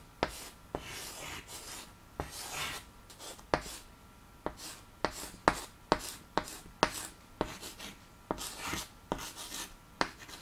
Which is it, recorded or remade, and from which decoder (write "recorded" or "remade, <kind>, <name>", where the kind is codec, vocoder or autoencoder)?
recorded